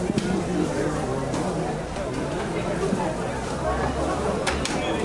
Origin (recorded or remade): recorded